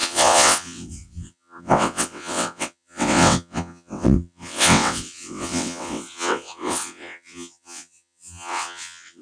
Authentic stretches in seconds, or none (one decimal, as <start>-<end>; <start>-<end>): none